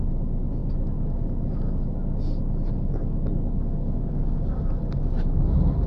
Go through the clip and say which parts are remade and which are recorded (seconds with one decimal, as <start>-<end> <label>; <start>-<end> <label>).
0.0-5.9 recorded